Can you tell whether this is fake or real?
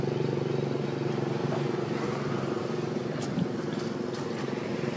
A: real